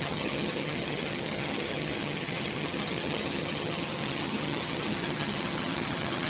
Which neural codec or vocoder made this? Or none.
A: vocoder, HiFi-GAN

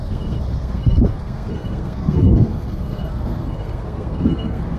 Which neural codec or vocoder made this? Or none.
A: codec, SNAC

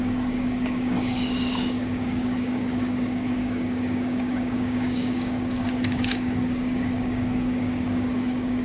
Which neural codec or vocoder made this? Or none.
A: codec, DAC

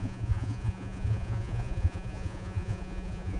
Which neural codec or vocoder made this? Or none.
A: vocoder, Vocos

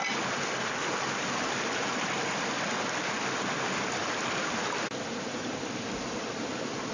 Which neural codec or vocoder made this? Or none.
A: none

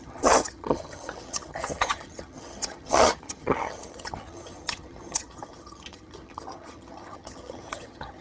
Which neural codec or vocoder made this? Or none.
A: vocoder, HiFi-GAN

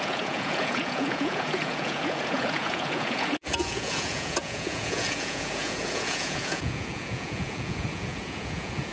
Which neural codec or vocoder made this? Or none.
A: vocoder, Vocos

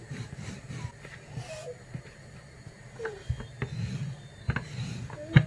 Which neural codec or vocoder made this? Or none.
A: none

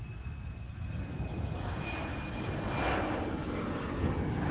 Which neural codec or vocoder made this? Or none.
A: none